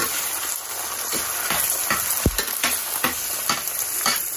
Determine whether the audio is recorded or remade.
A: recorded